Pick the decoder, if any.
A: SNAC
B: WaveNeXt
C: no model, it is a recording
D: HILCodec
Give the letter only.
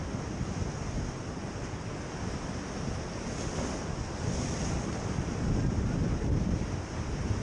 C